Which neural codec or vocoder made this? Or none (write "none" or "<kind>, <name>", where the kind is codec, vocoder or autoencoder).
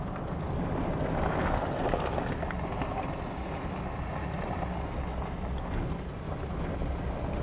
none